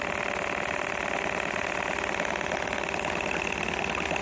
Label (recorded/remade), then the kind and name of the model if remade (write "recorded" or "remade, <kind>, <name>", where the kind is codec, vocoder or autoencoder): recorded